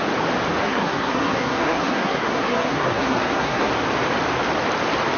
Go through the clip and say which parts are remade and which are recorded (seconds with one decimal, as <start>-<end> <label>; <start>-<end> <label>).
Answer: 0.0-0.6 recorded; 0.6-3.7 remade; 3.7-5.2 recorded